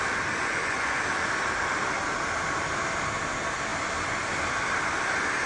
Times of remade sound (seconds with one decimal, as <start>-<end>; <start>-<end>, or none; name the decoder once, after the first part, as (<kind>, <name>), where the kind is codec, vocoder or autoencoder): 0.4-1.0 (vocoder, Vocos)